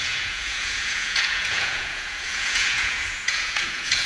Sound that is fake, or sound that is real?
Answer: fake